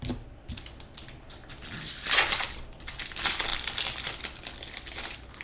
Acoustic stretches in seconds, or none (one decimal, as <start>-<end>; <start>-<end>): 0.0-5.4